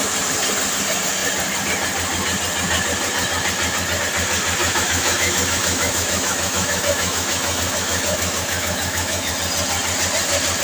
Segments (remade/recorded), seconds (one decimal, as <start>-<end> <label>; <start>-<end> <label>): 0.0-4.6 recorded; 4.6-9.3 remade; 9.3-10.6 recorded